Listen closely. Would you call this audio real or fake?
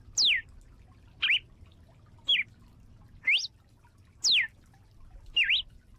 real